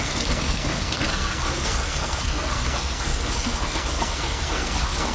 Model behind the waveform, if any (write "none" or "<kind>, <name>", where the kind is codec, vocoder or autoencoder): codec, SNAC